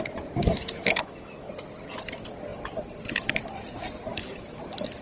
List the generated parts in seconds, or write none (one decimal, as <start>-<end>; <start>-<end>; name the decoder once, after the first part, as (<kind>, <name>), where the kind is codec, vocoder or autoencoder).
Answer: 0.4-1.5 (autoencoder, DAC-VAE); 4.1-4.6

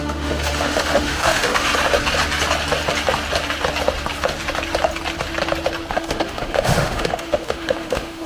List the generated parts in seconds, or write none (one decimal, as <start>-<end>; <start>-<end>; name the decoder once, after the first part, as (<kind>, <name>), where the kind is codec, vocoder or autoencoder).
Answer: 0.0-1.7 (autoencoder, DAC-VAE); 5.9-8.3

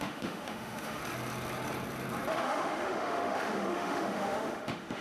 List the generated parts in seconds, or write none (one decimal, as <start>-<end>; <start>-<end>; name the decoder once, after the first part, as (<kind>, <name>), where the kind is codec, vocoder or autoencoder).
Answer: 0.0-1.0 (autoencoder, DAC-VAE); 2.3-5.0

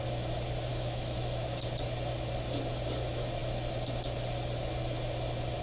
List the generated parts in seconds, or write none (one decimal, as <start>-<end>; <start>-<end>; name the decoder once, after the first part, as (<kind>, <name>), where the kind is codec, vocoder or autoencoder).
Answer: 0.7-1.4 (autoencoder, DAC-VAE)

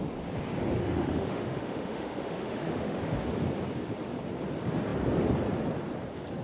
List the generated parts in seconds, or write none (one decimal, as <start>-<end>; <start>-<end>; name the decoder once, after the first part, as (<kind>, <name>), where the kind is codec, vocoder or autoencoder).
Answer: 0.8-3.0 (autoencoder, DAC-VAE)

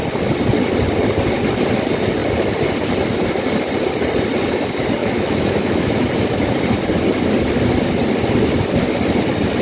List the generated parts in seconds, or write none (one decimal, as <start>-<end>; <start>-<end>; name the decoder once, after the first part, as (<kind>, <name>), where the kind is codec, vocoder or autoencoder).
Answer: 5.0-6.1 (autoencoder, DAC-VAE)

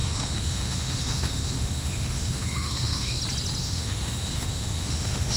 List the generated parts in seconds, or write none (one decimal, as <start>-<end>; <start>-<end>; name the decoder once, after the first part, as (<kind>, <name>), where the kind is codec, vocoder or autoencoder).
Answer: 0.0-3.2 (autoencoder, DAC-VAE); 3.6-5.4

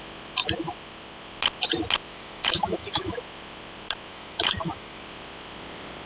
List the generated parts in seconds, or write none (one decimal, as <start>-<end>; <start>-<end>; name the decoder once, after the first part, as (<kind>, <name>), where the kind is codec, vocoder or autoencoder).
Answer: 2.1-3.2 (autoencoder, DAC-VAE); 4.1-5.0